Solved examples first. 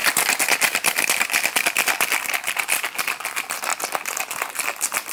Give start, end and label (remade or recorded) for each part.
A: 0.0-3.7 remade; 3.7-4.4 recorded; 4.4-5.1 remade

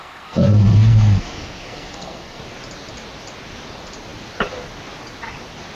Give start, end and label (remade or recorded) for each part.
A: 0.0-2.4 remade; 2.4-5.7 recorded

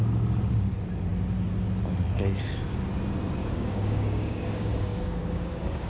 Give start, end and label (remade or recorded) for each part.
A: 0.0-3.4 recorded; 3.4-5.9 remade

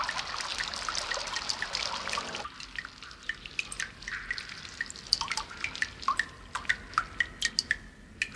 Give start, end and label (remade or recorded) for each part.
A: 0.0-8.4 recorded

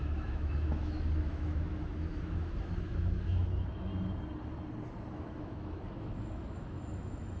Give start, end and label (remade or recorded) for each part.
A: 0.0-3.9 remade; 3.9-5.1 recorded; 5.1-7.4 remade